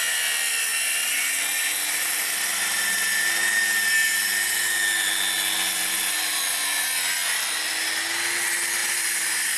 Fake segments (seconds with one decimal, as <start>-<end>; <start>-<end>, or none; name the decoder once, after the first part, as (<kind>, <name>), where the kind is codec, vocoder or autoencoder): 8.8-9.6 (vocoder, BigVGAN v2)